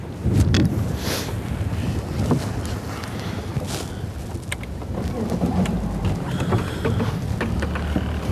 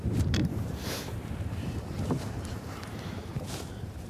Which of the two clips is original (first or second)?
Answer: first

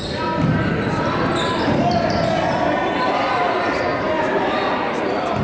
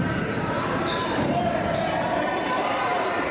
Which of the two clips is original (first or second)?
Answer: first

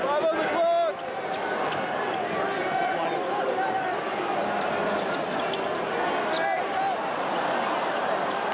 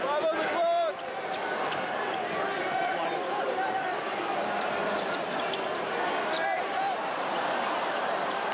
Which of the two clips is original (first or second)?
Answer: first